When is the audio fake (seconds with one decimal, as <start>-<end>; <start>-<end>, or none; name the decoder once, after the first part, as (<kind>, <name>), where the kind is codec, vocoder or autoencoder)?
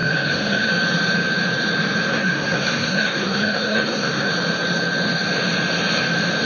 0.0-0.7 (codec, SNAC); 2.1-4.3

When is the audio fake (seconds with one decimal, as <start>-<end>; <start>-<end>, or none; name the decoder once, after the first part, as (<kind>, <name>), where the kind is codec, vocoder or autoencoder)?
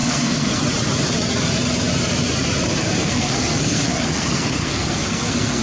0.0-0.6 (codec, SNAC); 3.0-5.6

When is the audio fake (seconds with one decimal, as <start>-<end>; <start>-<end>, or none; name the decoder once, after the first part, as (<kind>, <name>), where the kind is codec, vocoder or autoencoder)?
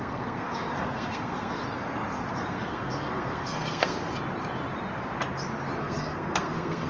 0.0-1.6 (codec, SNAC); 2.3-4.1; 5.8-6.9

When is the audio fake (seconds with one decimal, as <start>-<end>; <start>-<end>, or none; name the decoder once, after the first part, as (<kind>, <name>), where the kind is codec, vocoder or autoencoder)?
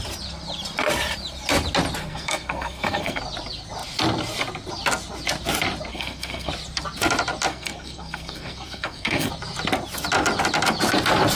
2.0-3.2 (codec, SNAC); 5.9-6.5; 7.5-9.3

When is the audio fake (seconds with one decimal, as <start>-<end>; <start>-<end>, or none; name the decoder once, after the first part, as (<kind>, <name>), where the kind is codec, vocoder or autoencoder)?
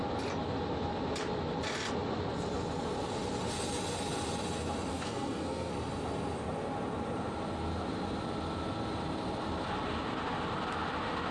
4.9-5.7 (codec, SNAC)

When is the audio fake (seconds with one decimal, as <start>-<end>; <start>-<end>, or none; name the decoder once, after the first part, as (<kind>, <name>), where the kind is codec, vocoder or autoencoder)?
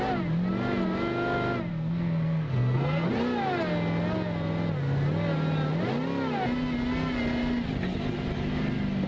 1.7-3.1 (codec, SNAC)